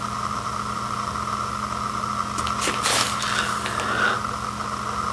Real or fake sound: real